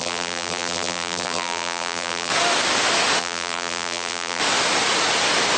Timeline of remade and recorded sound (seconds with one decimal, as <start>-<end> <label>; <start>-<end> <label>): 0.0-2.3 remade; 2.3-3.2 recorded; 3.2-4.4 remade; 4.4-5.6 recorded